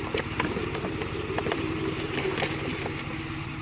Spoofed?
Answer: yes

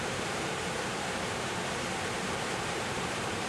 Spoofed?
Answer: yes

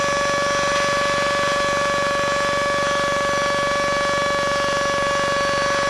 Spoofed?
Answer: no